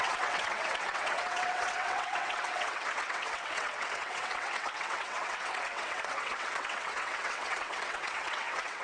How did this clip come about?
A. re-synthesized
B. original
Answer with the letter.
A